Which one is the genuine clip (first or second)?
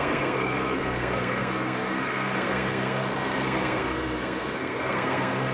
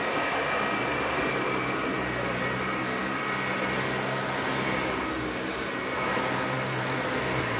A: second